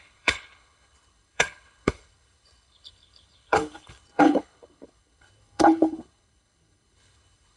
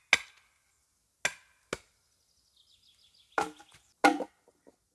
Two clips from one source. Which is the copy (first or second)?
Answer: first